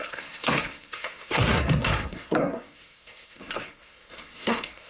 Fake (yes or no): yes